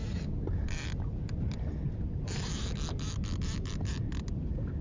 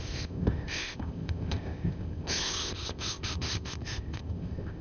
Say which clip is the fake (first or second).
second